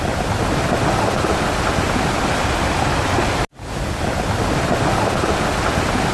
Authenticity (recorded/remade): recorded